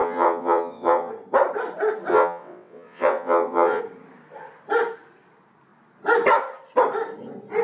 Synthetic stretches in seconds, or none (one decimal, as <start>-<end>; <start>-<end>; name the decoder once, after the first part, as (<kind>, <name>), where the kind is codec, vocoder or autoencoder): 0.0-1.1 (vocoder, WaveNeXt); 2.1-3.8